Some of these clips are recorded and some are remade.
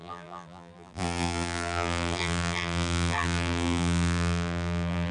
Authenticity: remade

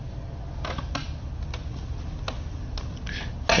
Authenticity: recorded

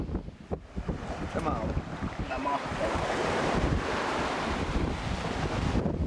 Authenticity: recorded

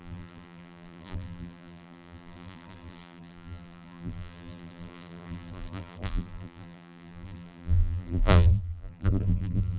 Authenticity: remade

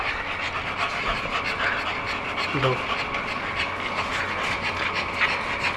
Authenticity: recorded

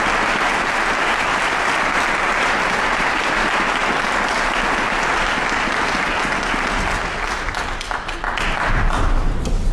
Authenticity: recorded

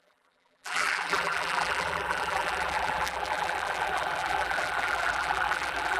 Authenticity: remade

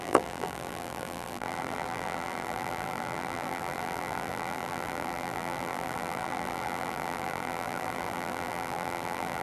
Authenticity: remade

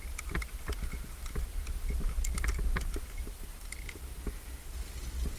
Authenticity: recorded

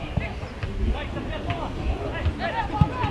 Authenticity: recorded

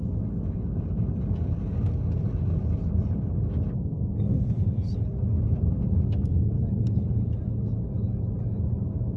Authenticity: recorded